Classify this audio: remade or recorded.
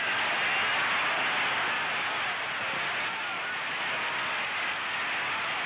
recorded